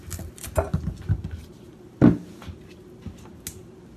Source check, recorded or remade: recorded